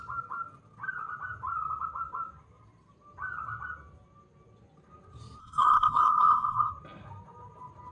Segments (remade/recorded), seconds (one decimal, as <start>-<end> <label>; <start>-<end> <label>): 0.0-5.4 recorded; 5.4-6.7 remade; 6.7-7.9 recorded